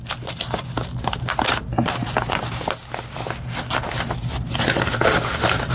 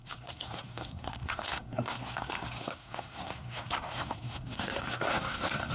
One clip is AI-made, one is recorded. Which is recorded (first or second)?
first